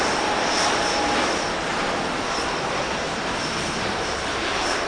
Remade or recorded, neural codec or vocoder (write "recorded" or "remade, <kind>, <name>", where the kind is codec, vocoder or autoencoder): recorded